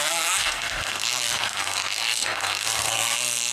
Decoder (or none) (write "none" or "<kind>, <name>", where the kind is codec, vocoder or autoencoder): codec, SNAC